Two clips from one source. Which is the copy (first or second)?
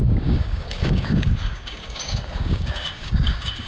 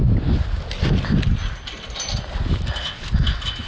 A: first